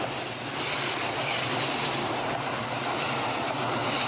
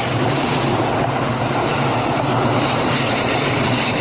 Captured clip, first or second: first